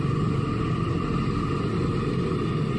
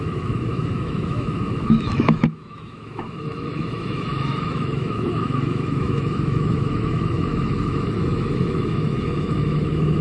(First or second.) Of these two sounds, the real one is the first